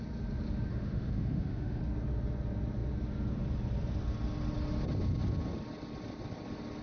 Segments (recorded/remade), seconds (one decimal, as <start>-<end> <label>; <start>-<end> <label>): 0.0-0.7 recorded; 0.7-1.8 remade; 1.8-6.8 recorded